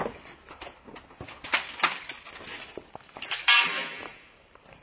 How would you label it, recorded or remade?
recorded